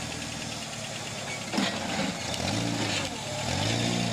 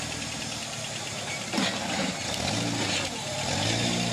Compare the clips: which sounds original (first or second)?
first